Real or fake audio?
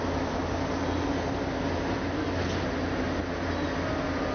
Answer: real